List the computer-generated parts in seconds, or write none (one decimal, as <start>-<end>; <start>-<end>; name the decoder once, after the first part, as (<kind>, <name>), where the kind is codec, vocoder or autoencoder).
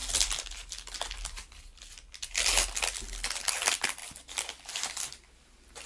none